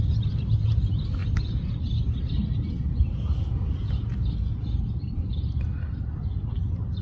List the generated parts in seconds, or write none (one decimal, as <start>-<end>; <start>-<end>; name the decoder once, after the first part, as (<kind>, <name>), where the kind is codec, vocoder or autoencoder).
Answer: none